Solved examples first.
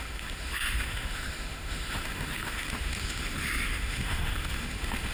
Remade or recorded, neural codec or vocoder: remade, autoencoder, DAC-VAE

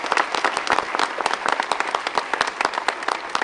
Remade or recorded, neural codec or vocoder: recorded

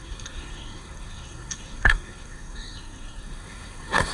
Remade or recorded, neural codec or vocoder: remade, codec, SNAC